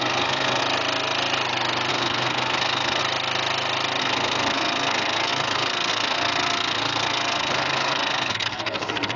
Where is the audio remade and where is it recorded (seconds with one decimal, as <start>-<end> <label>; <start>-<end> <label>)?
0.0-0.6 remade; 0.6-1.9 recorded; 1.9-3.0 remade; 3.0-4.0 recorded; 4.0-9.2 remade